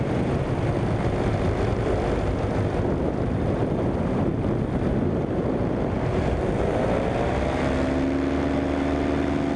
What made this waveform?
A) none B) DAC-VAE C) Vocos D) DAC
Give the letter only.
A